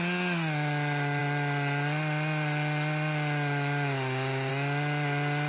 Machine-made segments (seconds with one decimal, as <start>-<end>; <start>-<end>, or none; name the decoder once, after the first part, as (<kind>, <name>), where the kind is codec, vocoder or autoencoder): none